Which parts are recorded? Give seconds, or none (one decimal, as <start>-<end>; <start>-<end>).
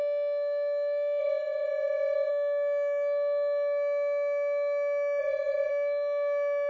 0.0-1.2; 2.3-5.2; 5.7-6.7